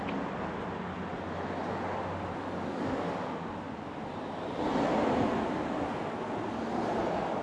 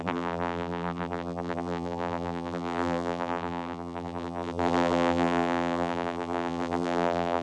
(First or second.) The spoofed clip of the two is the second